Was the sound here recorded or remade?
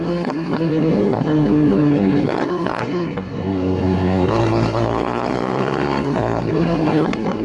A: remade